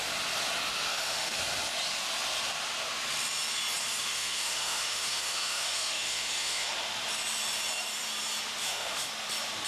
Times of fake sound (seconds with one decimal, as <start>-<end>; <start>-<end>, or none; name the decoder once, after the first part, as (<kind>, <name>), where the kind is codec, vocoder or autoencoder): 0.9-1.4 (autoencoder, DAC-VAE); 4.0-6.7; 8.6-9.1